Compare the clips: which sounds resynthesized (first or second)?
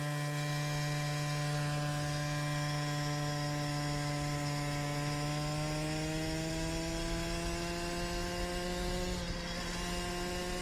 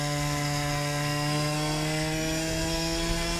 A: second